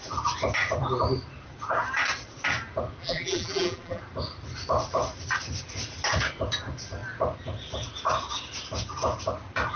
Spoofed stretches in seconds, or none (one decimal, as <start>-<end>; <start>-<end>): 3.0-4.0